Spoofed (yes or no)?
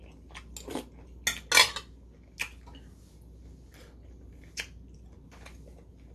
no